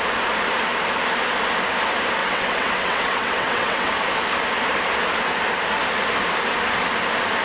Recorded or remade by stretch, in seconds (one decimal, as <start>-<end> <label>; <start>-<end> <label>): 0.0-2.2 recorded; 2.2-3.9 remade; 3.9-7.4 recorded